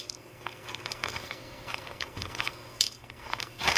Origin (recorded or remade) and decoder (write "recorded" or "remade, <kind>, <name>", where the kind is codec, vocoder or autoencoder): remade, codec, SNAC